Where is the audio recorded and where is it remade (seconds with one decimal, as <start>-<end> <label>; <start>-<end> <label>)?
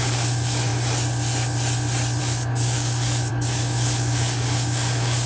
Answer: 0.0-0.7 remade; 0.7-2.2 recorded; 2.2-5.3 remade